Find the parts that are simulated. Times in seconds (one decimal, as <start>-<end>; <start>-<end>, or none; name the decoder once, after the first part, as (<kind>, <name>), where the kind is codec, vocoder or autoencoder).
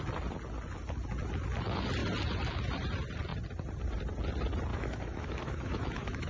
4.7-6.3 (autoencoder, DAC-VAE)